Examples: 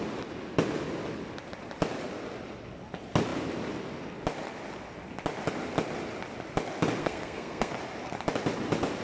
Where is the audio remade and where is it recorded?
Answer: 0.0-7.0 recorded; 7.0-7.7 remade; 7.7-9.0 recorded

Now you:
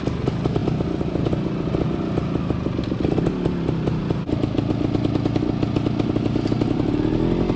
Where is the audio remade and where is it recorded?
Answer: 0.0-7.6 recorded

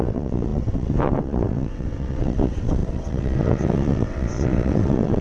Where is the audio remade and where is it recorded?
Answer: 0.0-5.2 remade